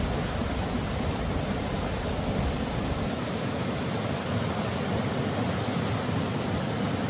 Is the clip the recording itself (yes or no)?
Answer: yes